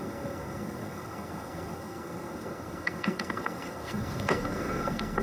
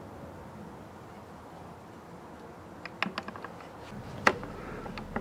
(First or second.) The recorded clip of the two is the second